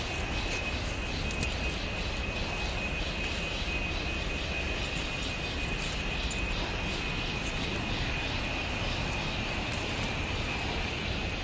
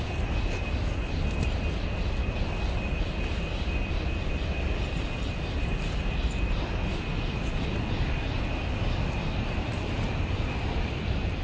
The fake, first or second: second